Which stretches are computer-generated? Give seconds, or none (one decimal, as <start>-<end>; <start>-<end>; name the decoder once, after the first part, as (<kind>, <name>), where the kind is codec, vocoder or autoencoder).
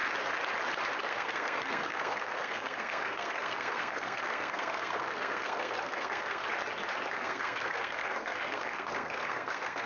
1.0-6.4 (codec, SNAC); 7.1-9.9